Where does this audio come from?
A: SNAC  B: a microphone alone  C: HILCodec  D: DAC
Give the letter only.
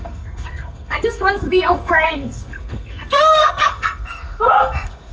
A